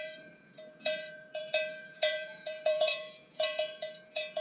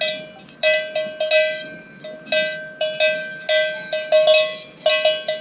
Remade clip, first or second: first